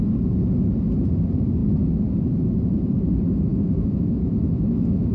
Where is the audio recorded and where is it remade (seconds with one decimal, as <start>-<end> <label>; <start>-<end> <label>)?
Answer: 0.0-3.5 recorded; 3.5-5.1 remade